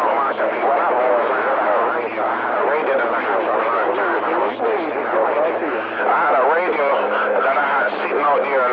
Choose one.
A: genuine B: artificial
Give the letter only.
B